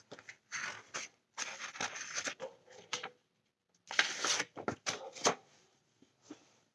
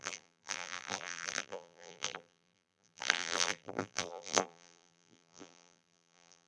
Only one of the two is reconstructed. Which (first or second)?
second